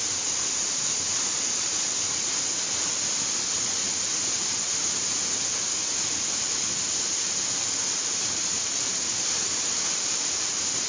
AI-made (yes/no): no